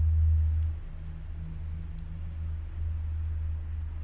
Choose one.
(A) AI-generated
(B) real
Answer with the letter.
B